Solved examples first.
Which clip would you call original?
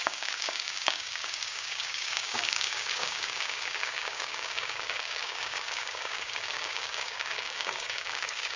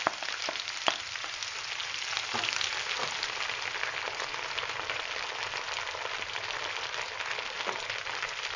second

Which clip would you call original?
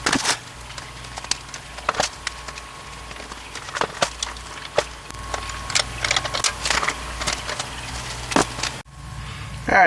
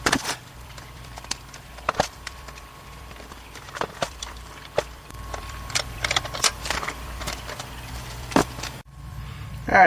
first